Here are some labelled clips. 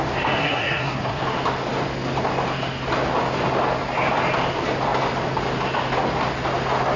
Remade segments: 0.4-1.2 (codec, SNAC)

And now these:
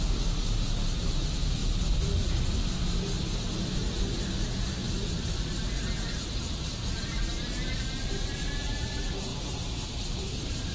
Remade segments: 0.0-1.6 (vocoder, BigVGAN v2); 2.5-9.3; 10.2-10.7

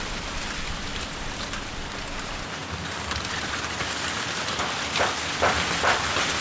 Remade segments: none